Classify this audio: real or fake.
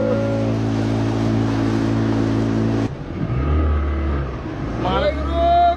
real